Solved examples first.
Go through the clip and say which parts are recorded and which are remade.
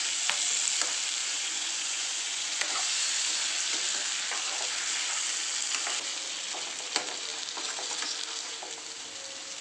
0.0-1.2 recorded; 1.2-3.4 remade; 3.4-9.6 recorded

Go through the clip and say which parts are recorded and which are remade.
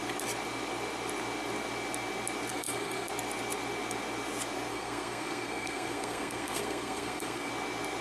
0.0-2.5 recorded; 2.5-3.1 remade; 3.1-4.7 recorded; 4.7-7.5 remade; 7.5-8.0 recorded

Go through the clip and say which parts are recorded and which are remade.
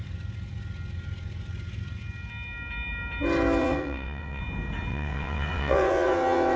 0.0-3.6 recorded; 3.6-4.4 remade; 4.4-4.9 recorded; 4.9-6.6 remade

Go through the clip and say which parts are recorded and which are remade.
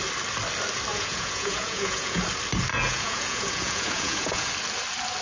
0.0-0.9 recorded; 0.9-2.2 remade; 2.2-2.7 recorded; 2.7-4.5 remade; 4.5-5.2 recorded